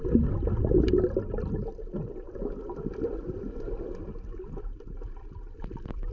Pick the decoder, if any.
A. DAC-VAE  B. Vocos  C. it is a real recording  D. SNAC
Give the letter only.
C